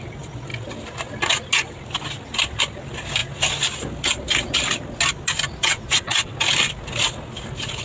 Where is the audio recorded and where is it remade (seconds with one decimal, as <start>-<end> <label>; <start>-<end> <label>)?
0.0-5.6 recorded; 5.6-6.3 remade; 6.3-7.8 recorded